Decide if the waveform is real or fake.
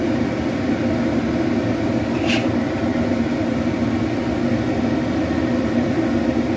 real